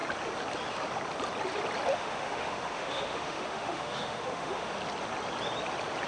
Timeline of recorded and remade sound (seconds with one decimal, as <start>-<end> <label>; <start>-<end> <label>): 0.0-1.9 recorded; 1.9-4.7 remade; 4.7-6.1 recorded